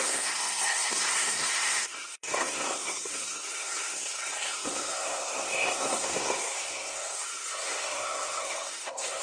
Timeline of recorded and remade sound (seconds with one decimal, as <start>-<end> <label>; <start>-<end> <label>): 0.0-9.2 remade